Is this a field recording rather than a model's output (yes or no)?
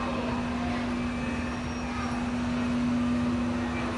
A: yes